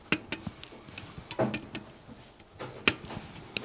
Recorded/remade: recorded